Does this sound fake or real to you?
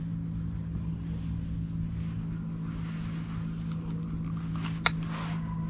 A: real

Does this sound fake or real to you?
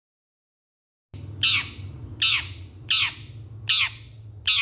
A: real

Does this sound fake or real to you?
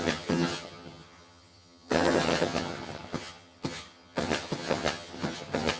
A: fake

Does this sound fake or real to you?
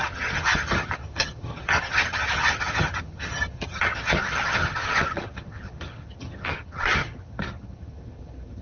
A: fake